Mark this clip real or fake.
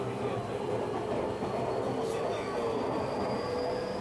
real